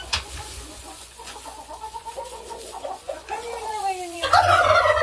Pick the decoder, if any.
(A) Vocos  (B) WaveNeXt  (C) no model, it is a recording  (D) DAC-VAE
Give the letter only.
A